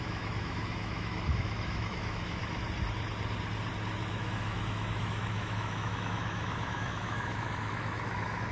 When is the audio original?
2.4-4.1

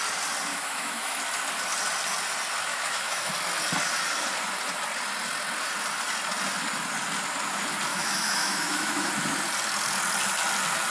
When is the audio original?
0.0-0.5; 1.2-2.7; 3.3-7.9; 9.1-10.9

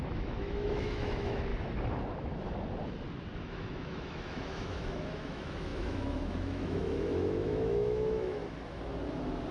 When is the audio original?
1.5-3.4; 8.4-9.5

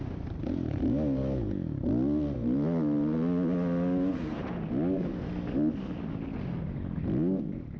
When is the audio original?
0.0-7.8

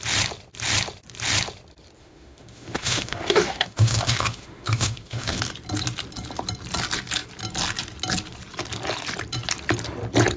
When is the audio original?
0.0-2.0; 5.4-10.4